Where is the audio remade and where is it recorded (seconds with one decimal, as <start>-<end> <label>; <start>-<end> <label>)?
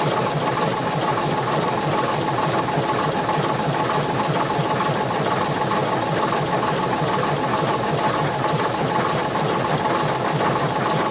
0.0-11.1 recorded